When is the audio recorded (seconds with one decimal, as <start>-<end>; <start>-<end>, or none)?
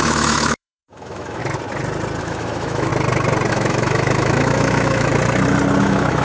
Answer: 1.4-2.2; 2.9-3.5; 5.1-5.8